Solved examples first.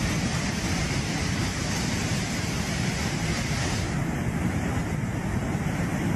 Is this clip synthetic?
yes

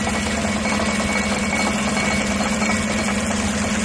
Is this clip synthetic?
no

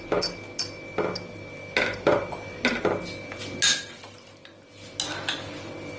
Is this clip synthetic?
no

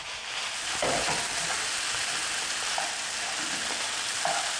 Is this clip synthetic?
no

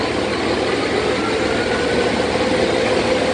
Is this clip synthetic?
no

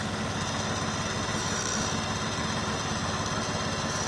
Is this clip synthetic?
no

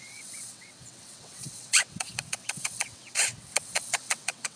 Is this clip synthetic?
yes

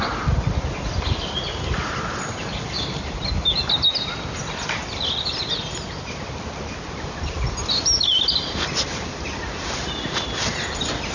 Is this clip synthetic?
no